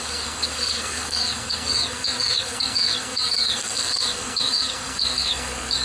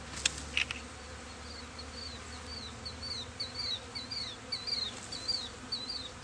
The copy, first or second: first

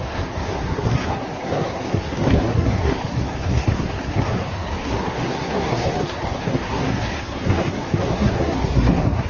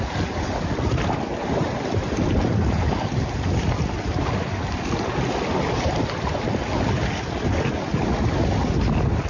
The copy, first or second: first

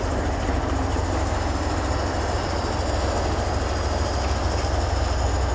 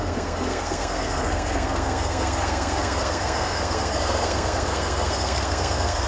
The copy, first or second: second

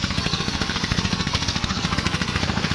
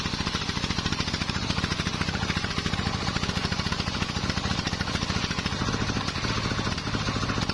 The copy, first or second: first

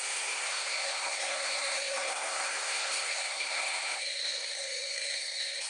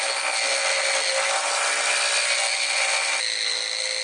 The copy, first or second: first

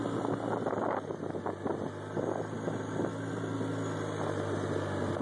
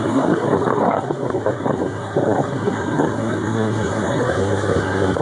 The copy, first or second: second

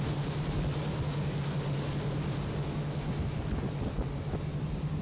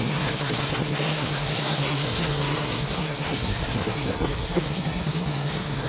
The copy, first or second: second